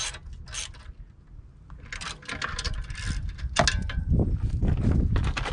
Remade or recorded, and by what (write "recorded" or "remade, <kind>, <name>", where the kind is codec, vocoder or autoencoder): recorded